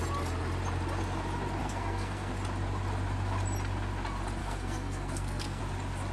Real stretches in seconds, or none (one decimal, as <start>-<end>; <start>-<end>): 0.0-1.6; 2.3-4.4; 5.6-6.1